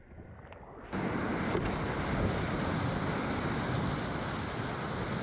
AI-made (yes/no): no